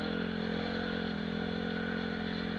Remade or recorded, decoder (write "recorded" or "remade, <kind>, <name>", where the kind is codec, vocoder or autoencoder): recorded